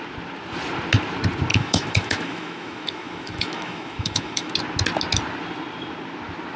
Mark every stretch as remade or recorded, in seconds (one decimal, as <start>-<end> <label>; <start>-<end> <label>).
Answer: 0.0-1.5 recorded; 1.5-4.5 remade; 4.5-6.6 recorded

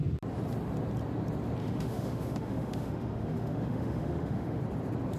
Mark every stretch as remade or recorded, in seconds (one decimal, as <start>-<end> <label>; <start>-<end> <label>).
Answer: 0.0-1.6 recorded; 1.6-4.6 remade; 4.6-5.2 recorded

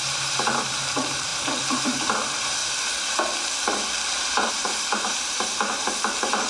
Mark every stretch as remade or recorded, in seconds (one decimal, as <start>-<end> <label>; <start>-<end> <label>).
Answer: 0.0-2.6 remade; 2.6-4.5 recorded; 4.5-6.5 remade

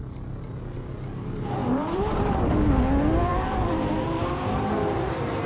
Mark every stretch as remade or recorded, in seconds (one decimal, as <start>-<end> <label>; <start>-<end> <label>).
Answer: 0.0-1.6 recorded; 1.6-2.4 remade; 2.4-3.3 recorded; 3.3-4.7 remade; 4.7-5.5 recorded

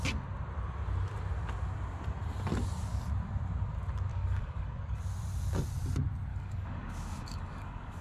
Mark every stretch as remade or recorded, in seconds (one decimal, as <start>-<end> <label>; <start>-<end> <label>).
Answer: 0.0-4.1 recorded; 4.1-5.0 remade; 5.0-6.3 recorded; 6.3-8.0 remade

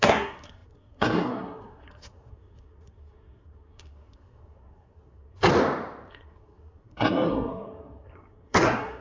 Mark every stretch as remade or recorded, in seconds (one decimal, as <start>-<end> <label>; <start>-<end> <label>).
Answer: 0.0-5.5 remade; 5.5-6.1 recorded; 6.1-9.0 remade

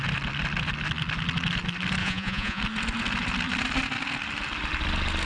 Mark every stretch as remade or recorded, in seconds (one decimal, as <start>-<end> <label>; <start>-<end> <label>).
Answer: 0.0-2.0 recorded; 2.0-2.6 remade; 2.6-5.3 recorded

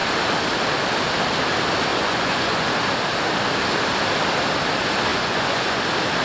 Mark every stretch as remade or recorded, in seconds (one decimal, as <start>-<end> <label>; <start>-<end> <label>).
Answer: 0.0-1.9 recorded; 1.9-2.7 remade; 2.7-5.1 recorded; 5.1-5.8 remade; 5.8-6.2 recorded